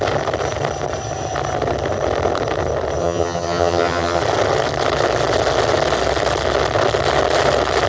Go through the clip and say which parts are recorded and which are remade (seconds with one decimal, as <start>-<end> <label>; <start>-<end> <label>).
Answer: 0.0-3.0 recorded; 3.0-4.2 remade; 4.2-7.9 recorded